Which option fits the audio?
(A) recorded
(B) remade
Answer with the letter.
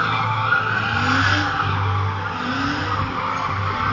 A